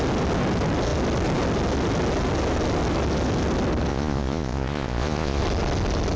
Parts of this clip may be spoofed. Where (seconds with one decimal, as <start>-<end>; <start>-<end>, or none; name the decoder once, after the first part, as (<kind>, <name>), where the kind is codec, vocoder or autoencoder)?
3.9-5.4 (vocoder, Vocos)